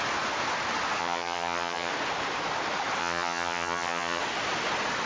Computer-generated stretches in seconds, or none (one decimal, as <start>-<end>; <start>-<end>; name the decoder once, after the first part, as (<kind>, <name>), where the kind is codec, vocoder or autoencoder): 1.0-1.9 (vocoder, HiFi-GAN); 3.0-4.2